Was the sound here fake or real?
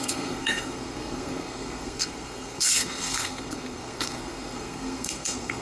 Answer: fake